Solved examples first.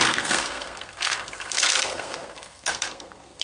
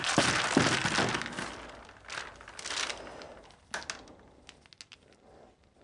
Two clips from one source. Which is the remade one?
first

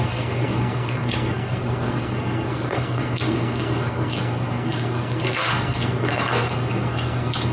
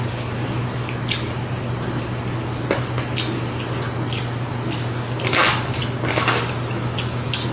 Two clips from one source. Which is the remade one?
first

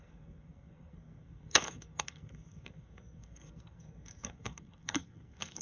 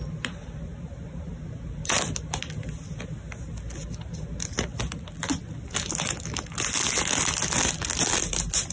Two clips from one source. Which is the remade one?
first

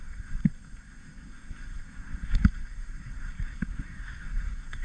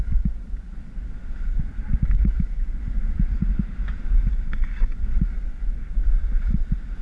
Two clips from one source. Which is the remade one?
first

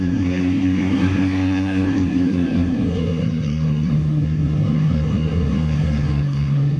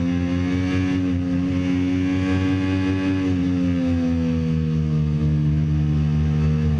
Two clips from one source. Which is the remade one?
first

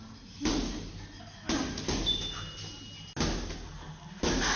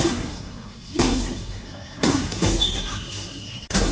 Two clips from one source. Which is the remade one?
second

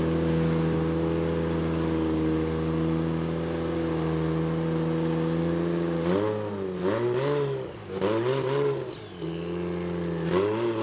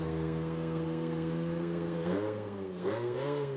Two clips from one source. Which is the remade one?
second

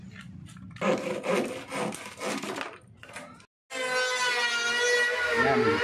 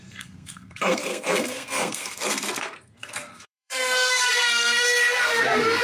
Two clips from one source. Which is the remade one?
second